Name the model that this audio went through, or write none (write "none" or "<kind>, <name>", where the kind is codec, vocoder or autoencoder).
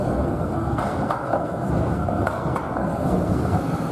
codec, SNAC